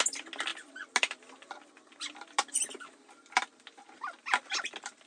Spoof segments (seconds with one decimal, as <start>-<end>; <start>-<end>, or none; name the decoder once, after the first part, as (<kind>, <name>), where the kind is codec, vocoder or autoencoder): none